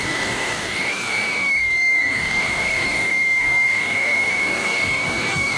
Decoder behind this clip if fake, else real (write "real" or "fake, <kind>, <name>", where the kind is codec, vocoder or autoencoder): fake, codec, DAC